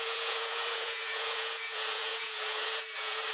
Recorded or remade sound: remade